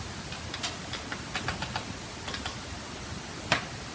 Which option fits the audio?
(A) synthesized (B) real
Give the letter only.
B